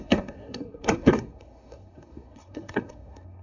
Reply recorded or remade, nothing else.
remade